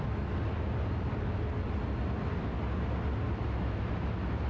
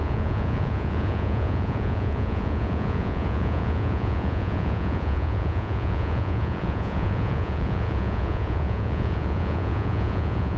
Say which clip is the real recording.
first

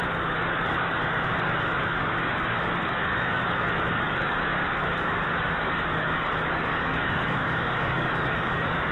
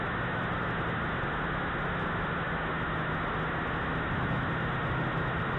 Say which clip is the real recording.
second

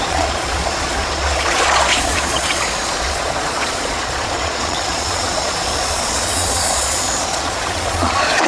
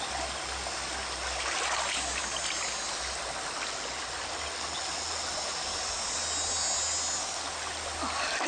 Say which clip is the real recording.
second